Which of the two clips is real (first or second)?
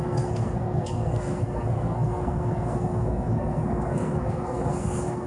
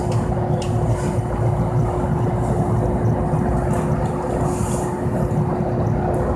second